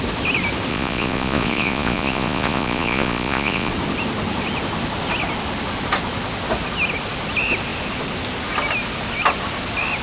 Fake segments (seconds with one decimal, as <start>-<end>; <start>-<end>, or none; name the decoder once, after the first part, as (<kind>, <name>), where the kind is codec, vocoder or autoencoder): 0.7-3.7 (vocoder, Vocos)